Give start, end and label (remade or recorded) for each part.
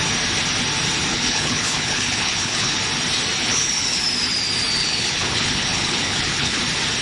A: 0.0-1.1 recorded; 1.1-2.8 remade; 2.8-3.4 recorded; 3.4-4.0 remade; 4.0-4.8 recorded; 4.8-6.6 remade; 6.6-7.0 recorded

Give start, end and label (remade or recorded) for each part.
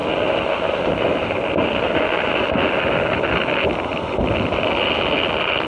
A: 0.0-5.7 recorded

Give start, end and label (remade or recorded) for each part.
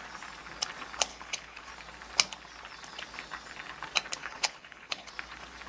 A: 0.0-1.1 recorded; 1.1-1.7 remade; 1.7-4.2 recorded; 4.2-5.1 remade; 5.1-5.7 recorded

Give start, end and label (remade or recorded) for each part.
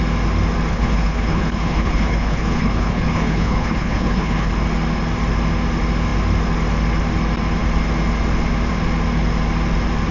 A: 0.0-0.7 recorded; 0.7-4.5 remade; 4.5-10.1 recorded